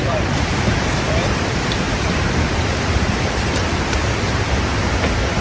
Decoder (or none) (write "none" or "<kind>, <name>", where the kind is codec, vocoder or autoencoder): vocoder, BigVGAN v2